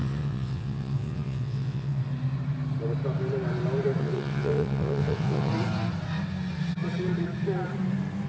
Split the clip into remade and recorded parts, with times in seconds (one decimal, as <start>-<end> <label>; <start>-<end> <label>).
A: 0.0-2.0 remade; 2.0-4.0 recorded; 4.0-5.5 remade; 5.5-8.3 recorded